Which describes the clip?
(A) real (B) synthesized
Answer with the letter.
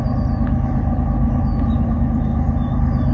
A